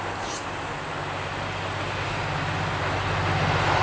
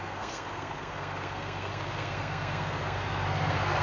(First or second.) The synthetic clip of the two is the second